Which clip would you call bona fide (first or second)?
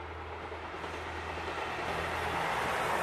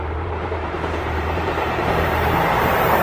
first